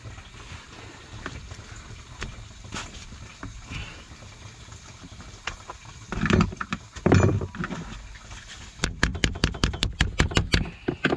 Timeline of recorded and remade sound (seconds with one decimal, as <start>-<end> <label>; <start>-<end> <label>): 0.0-11.2 remade